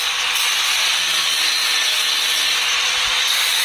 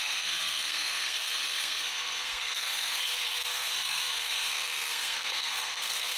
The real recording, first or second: first